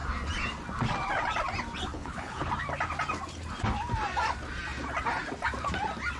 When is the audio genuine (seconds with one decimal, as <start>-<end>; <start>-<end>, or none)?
0.0-1.9; 2.5-6.2

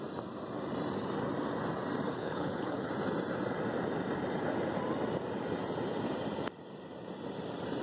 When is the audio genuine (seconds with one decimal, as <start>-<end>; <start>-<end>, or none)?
0.0-2.1; 2.9-7.8

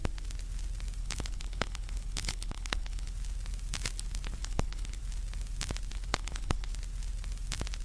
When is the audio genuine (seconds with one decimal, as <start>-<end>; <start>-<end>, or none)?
0.0-1.0; 3.1-4.4; 5.0-6.1; 6.7-7.8

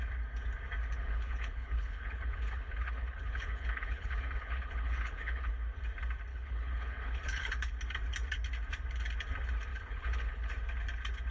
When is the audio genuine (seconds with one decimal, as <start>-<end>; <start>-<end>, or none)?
0.0-0.8; 5.5-6.3; 7.7-9.7; 10.5-11.3

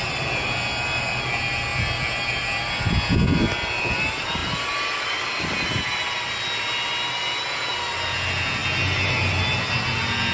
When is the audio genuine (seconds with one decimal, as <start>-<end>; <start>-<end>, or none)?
0.0-10.3

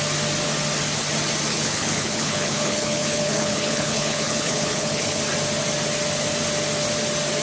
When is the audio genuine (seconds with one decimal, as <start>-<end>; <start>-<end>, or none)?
0.0-1.5; 5.2-7.4

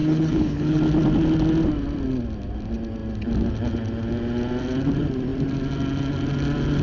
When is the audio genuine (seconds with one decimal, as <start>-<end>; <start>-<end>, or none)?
0.8-6.8

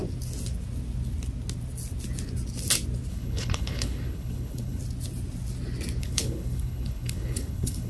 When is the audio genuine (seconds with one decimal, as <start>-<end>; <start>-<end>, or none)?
0.0-3.1; 4.8-6.0